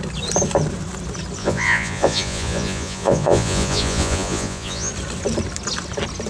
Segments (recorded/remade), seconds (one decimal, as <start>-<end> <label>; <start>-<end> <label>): 0.0-1.4 recorded; 1.4-4.9 remade; 4.9-6.3 recorded